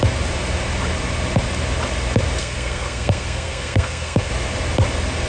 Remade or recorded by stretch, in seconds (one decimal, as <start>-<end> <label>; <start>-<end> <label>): 0.0-2.4 recorded; 2.4-4.3 remade; 4.3-5.3 recorded